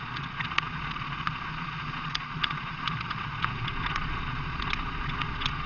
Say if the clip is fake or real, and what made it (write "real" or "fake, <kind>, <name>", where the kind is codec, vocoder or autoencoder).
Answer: fake, vocoder, Vocos